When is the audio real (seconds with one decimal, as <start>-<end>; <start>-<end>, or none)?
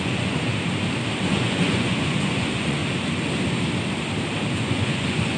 0.5-1.2; 2.8-4.5